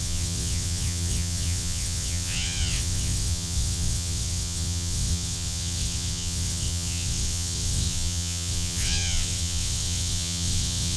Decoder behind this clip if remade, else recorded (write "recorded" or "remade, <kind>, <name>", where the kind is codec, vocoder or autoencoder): remade, vocoder, WaveNeXt